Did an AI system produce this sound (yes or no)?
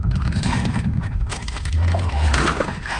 yes